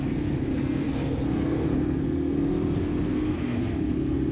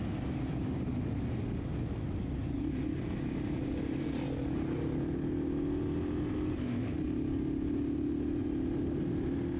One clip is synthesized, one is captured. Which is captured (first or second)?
second